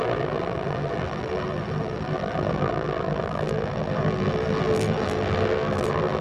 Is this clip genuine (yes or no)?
no